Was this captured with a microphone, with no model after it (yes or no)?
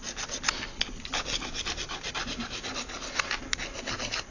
yes